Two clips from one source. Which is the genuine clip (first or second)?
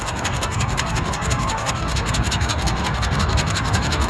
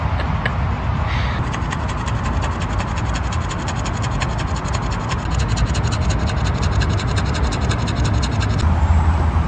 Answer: second